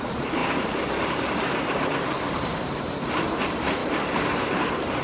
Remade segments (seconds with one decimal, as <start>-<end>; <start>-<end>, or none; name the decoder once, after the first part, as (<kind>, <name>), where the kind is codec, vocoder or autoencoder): 0.0-5.0 (vocoder, BigVGAN v2)